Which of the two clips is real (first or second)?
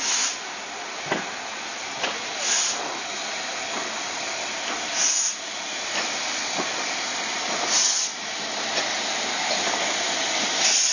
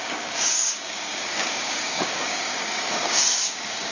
first